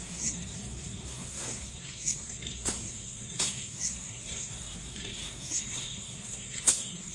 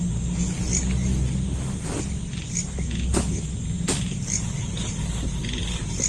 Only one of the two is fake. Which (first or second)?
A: first